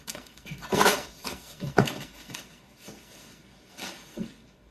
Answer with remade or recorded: remade